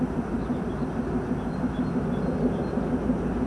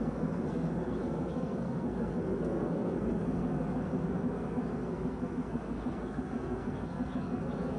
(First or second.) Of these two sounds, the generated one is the second